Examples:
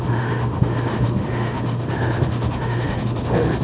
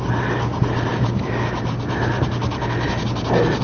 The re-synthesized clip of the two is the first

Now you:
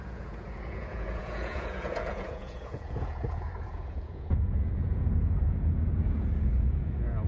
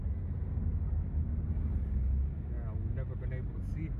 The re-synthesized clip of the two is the first